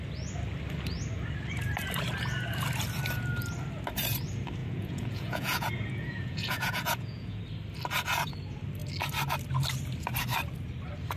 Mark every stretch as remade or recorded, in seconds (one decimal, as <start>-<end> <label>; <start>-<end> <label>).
0.0-4.6 recorded; 4.6-7.4 remade; 7.4-11.2 recorded